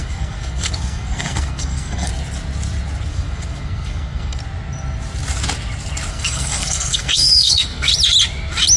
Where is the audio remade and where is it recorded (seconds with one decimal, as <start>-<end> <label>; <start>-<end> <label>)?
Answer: 0.0-2.1 remade; 2.1-3.1 recorded; 3.1-4.4 remade; 4.4-6.1 recorded; 6.1-7.9 remade; 7.9-8.8 recorded